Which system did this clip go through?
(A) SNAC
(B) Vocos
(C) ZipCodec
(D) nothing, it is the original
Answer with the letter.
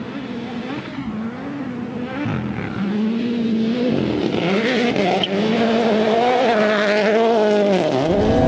D